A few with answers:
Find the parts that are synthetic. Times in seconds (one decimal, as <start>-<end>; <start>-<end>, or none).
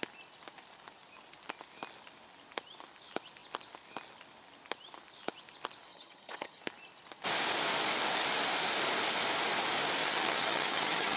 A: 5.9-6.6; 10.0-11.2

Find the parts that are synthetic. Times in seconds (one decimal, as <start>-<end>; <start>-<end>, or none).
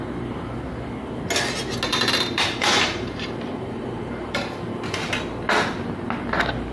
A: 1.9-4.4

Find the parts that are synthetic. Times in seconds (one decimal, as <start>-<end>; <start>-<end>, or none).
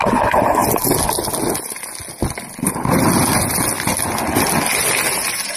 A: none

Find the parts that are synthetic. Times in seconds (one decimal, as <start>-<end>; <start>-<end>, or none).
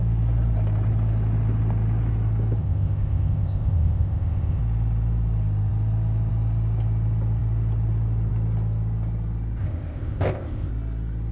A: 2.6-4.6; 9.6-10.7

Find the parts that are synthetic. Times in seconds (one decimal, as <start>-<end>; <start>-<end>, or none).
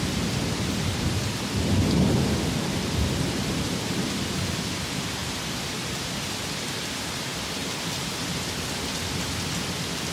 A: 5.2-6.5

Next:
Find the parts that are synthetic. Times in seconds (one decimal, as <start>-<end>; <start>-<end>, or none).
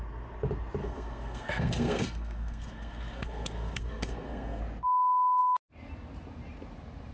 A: 0.8-4.6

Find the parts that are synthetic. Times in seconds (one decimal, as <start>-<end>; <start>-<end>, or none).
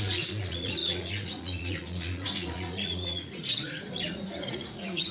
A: 0.0-5.1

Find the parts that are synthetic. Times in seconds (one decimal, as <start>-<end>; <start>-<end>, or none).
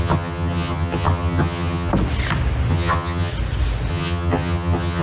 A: 0.0-1.9; 2.7-3.3; 3.9-5.0